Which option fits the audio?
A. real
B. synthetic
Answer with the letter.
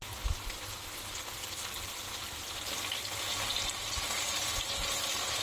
A